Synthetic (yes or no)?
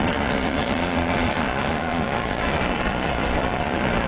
yes